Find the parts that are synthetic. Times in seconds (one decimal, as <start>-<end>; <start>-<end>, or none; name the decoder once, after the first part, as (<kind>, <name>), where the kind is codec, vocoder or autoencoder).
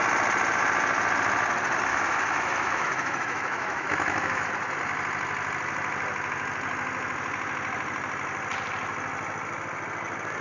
1.9-4.5 (autoencoder, DAC-VAE)